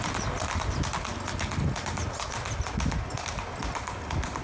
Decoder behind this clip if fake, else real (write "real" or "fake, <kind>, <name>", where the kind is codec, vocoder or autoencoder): real